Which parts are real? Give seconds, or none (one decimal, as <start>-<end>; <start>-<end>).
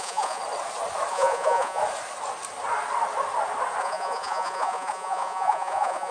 0.4-1.1; 1.8-3.8